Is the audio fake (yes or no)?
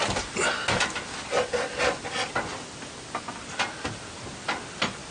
no